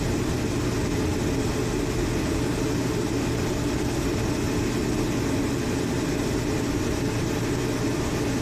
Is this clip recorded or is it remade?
recorded